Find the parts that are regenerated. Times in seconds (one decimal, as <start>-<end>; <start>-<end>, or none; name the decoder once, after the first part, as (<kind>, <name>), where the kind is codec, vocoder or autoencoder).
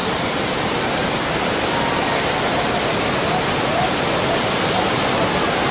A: none